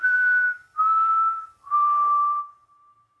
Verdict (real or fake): real